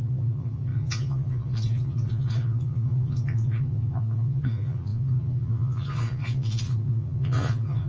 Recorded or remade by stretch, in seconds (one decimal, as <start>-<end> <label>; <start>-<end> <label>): 0.0-7.9 remade